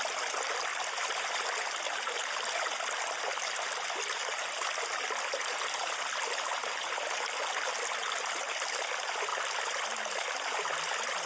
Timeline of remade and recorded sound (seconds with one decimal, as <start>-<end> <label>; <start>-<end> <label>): 0.0-9.3 recorded; 9.3-11.3 remade